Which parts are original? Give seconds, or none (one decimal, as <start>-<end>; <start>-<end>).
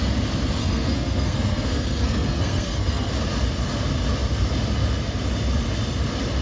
0.0-0.6; 3.1-6.4